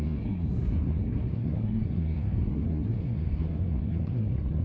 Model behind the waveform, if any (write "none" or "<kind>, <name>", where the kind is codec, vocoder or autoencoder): codec, SNAC